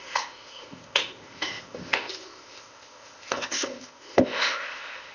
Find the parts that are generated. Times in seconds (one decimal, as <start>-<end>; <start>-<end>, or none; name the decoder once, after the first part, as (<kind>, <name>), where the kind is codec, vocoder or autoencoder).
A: 0.0-5.1 (codec, ZipCodec)